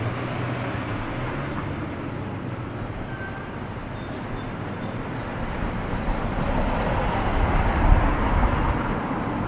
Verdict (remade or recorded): recorded